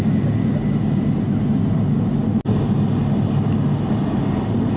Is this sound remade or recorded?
recorded